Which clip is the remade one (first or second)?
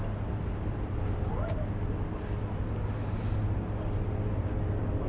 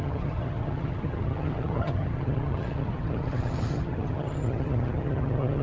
second